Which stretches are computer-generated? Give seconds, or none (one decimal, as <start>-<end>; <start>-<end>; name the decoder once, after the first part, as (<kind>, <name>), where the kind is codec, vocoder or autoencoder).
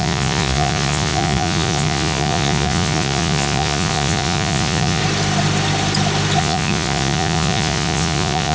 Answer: 0.0-5.0 (vocoder, Vocos); 6.4-8.5